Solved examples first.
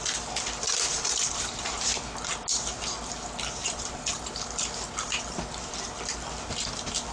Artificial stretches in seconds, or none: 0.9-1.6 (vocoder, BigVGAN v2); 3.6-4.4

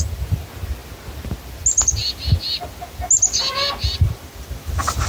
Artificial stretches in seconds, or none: none

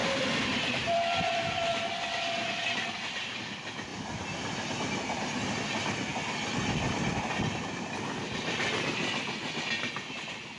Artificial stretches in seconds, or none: 0.0-3.4 (vocoder, BigVGAN v2)